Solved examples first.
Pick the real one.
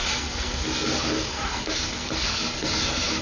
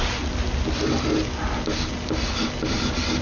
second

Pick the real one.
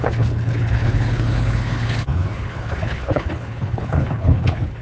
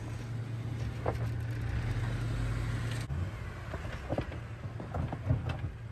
second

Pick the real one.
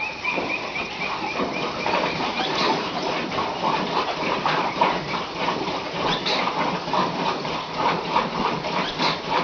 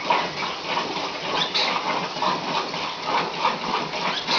second